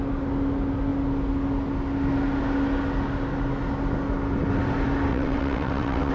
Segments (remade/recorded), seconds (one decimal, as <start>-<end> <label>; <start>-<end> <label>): 0.0-5.1 recorded; 5.1-6.1 remade